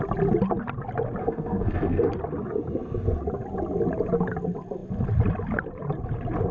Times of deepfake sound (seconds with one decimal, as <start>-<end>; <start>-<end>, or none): 1.2-2.1